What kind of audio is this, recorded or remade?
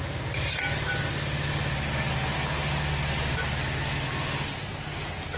recorded